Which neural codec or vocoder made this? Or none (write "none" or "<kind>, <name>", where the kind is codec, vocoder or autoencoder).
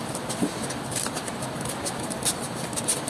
none